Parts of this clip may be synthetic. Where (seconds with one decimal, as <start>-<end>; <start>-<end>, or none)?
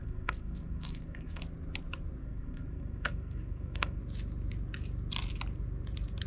0.0-1.4; 2.2-4.0